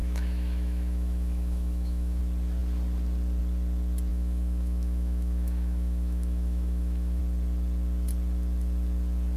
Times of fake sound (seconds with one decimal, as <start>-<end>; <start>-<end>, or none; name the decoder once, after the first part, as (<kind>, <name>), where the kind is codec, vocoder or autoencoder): 0.0-2.2 (autoencoder, DAC-VAE); 4.1-7.2